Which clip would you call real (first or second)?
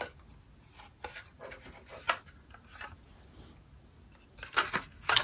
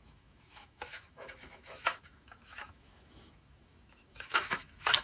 first